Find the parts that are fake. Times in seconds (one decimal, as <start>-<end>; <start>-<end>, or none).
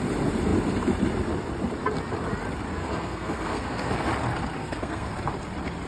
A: 2.7-4.1; 4.6-5.1